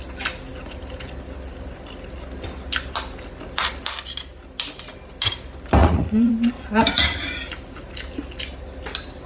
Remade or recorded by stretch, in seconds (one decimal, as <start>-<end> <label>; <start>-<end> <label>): 0.0-5.8 recorded; 5.8-6.3 remade; 6.3-9.3 recorded